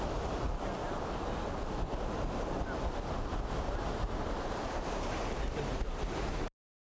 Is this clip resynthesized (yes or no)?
no